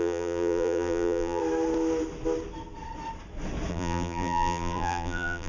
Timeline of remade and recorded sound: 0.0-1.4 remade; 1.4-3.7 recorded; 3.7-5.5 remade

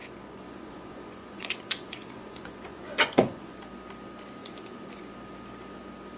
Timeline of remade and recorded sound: 0.0-3.7 remade; 3.7-4.4 recorded; 4.4-5.1 remade; 5.1-6.2 recorded

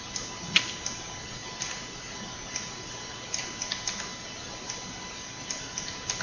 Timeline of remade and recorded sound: 0.0-6.2 recorded

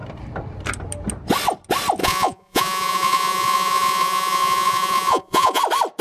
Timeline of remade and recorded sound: 0.0-2.0 recorded; 2.0-5.6 remade; 5.6-6.0 recorded